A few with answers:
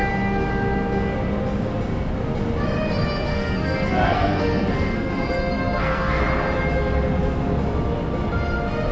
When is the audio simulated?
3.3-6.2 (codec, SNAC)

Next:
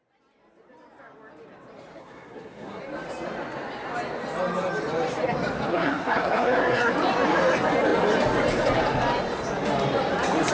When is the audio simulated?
2.0-2.8 (codec, SNAC); 5.7-6.9

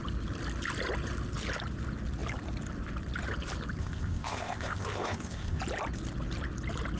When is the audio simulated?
3.8-5.6 (codec, ZipCodec)